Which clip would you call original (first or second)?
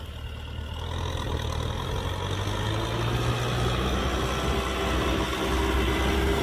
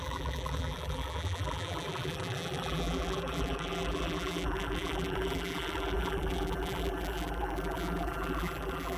first